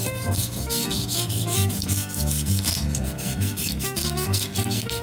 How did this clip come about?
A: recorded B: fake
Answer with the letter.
B